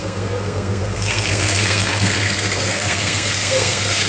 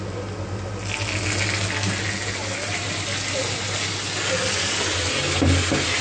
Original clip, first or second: second